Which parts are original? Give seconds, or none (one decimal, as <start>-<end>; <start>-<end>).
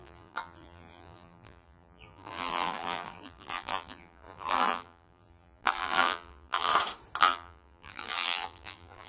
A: 6.7-7.2